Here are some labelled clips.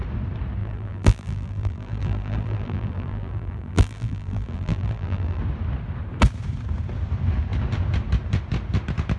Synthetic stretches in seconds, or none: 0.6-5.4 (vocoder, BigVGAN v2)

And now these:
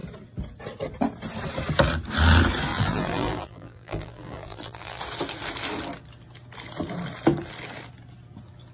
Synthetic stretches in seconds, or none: 2.7-5.0 (vocoder, BigVGAN v2)

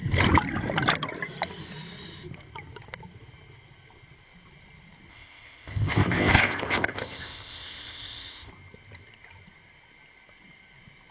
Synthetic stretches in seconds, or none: 5.1-8.5 (codec, ZipCodec)

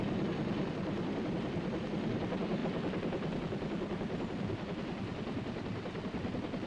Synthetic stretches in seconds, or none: none

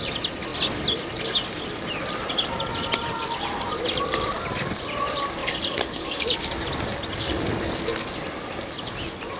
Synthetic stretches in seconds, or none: 5.4-6.4 (codec, DAC)